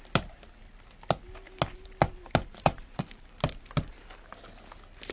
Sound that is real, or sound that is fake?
real